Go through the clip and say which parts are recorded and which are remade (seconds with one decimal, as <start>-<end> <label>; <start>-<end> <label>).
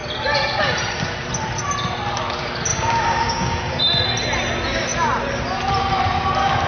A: 0.0-2.7 recorded; 2.7-3.8 remade; 3.8-6.7 recorded